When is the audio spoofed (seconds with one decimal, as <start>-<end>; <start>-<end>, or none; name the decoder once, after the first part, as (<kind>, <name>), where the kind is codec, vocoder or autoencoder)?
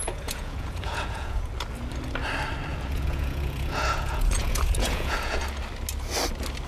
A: 0.0-1.5 (vocoder, Vocos); 2.7-5.4